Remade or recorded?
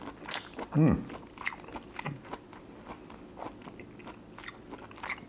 recorded